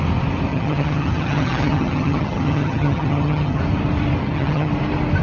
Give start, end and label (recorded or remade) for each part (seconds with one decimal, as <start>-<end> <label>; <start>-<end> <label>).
0.0-0.5 recorded; 0.5-3.6 remade; 3.6-4.2 recorded; 4.2-4.7 remade; 4.7-5.2 recorded